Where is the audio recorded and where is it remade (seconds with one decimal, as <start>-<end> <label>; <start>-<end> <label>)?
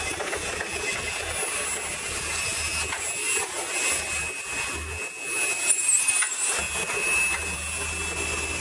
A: 0.0-8.6 recorded